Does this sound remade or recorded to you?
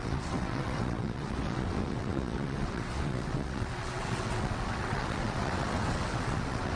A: remade